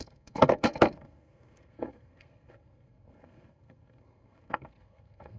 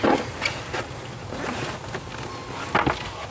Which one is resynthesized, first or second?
first